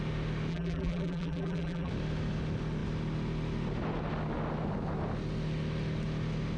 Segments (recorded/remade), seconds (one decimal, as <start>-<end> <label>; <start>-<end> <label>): 0.0-0.5 recorded; 0.5-1.9 remade; 1.9-6.6 recorded

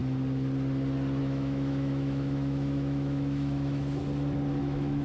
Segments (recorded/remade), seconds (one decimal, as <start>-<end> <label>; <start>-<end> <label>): 0.0-1.2 recorded; 1.2-4.0 remade; 4.0-4.6 recorded; 4.6-5.0 remade